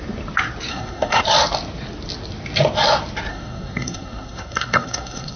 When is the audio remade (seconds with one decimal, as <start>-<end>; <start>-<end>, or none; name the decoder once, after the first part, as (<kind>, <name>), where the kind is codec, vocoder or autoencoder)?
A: 0.7-1.2 (codec, SNAC); 3.3-5.4